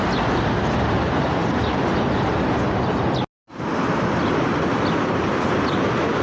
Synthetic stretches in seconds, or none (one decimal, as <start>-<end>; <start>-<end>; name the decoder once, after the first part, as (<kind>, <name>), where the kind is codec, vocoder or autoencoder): none